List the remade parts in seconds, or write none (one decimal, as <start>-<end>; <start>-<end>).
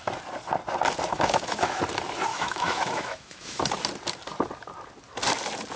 1.1-1.8; 2.3-3.6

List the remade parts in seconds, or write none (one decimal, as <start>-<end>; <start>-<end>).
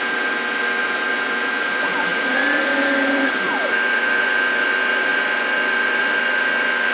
none